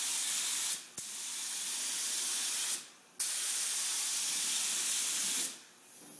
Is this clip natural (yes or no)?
yes